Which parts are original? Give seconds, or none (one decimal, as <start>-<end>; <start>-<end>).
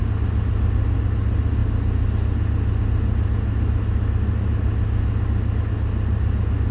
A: 0.0-6.7